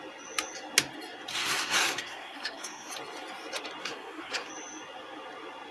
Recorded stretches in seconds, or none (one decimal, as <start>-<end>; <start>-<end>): 0.0-1.3; 2.9-3.8; 4.5-5.7